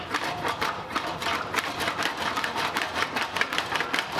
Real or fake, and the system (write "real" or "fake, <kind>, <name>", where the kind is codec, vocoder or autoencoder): fake, vocoder, BigVGAN v2